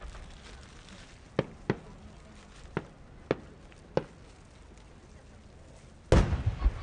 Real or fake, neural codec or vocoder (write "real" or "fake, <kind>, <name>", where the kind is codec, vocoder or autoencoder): real